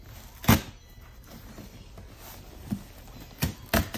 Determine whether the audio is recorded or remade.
recorded